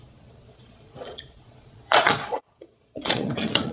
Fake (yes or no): yes